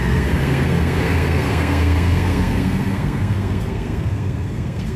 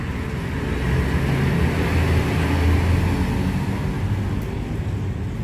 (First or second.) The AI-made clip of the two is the first